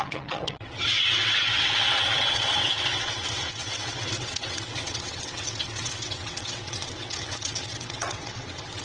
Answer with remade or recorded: remade